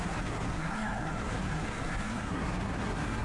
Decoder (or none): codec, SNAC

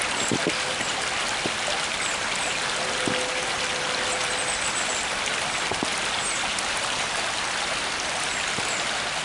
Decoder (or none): none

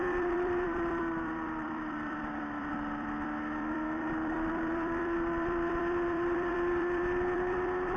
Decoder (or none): vocoder, BigVGAN v2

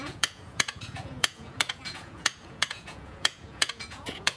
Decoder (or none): vocoder, Vocos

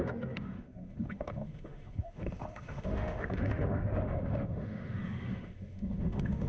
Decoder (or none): autoencoder, DAC-VAE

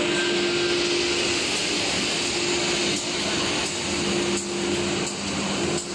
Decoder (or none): none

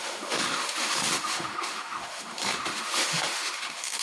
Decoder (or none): autoencoder, DAC-VAE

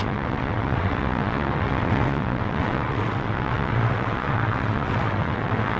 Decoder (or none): vocoder, WaveNeXt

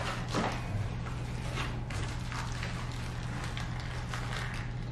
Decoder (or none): none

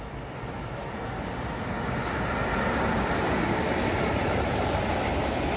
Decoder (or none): none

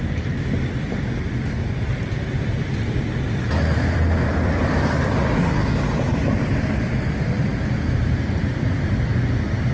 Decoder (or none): vocoder, BigVGAN v2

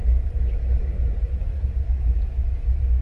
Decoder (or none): autoencoder, DAC-VAE